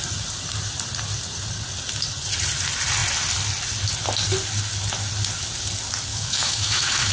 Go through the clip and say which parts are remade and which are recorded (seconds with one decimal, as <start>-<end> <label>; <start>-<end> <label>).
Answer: 0.0-6.1 recorded; 6.1-7.1 remade